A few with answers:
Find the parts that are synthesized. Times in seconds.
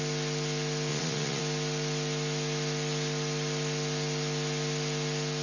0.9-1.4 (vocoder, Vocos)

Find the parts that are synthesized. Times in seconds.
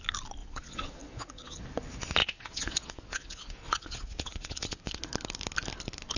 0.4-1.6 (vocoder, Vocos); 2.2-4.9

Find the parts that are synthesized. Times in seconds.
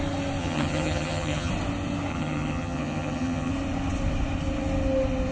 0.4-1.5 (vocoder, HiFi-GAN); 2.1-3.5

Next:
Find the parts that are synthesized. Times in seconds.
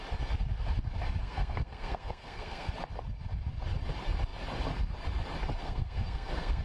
1.2-2.7 (codec, SNAC); 5.6-6.6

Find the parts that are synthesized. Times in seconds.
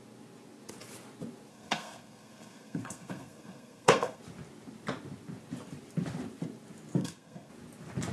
1.5-4.2 (codec, SNAC); 7.0-7.5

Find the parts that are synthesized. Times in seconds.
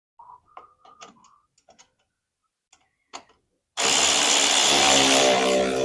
none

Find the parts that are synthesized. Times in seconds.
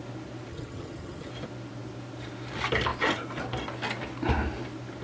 0.5-1.3 (vocoder, HiFi-GAN)